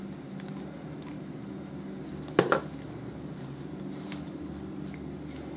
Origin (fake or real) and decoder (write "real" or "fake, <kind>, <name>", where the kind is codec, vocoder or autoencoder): real